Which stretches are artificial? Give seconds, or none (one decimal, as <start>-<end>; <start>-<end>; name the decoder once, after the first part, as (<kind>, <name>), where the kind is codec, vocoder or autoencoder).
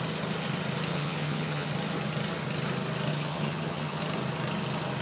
0.9-1.7 (vocoder, HiFi-GAN); 3.1-4.0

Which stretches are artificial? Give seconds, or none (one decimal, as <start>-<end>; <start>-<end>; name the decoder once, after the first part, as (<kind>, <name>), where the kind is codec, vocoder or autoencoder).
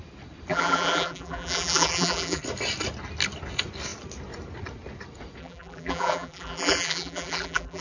0.5-2.4 (vocoder, BigVGAN v2); 5.4-7.8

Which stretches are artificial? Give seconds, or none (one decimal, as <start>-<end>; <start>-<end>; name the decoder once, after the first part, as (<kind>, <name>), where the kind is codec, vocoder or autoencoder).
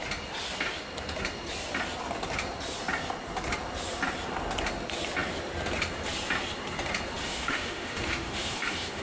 7.2-9.0 (autoencoder, DAC-VAE)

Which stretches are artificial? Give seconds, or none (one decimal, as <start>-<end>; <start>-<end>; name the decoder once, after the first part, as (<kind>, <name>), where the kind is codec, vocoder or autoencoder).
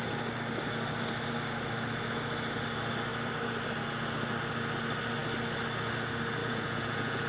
6.4-7.3 (vocoder, Vocos)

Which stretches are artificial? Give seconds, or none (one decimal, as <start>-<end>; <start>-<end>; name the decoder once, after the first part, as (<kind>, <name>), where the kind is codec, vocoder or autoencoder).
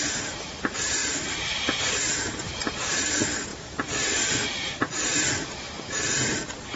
1.0-1.9 (vocoder, BigVGAN v2)